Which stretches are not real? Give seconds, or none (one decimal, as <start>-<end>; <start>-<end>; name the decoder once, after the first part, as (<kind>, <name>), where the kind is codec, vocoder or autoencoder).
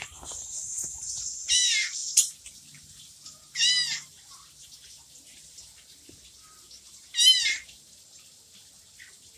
none